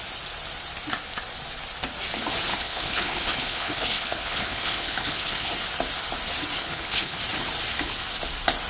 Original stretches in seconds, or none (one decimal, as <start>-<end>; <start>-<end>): 0.0-2.5; 5.5-6.6; 7.2-8.7